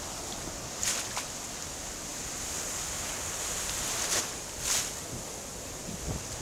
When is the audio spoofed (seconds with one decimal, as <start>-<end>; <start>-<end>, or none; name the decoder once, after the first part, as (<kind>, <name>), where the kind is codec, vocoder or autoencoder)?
none